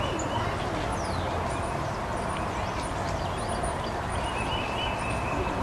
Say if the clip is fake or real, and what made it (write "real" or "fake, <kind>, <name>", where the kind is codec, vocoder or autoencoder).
real